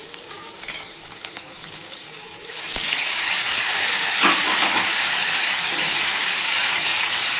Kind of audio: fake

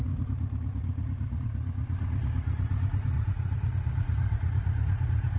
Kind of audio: fake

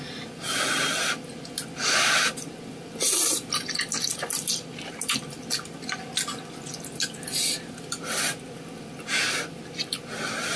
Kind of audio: real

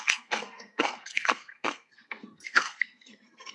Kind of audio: fake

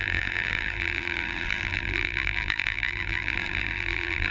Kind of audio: fake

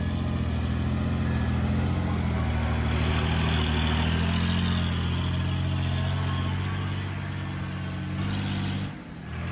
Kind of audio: real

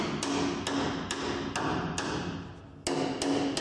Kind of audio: real